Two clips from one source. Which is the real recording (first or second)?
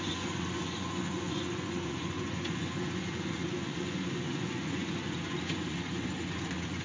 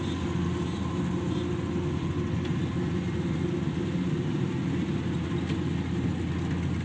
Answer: second